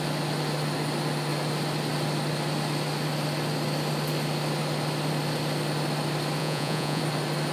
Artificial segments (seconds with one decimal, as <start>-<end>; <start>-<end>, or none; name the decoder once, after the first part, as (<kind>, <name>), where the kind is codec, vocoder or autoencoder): 6.4-7.0 (vocoder, Vocos)